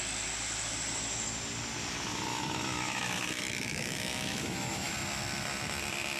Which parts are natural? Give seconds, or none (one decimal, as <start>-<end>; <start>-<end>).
0.0-2.3; 4.9-6.2